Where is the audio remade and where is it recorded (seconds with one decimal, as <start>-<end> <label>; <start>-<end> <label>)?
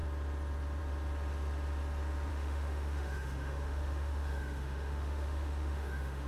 0.0-2.3 recorded; 2.3-6.3 remade